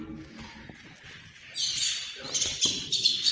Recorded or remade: recorded